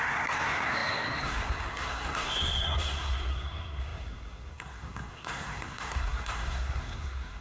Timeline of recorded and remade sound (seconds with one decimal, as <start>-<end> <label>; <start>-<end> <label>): 0.0-7.4 remade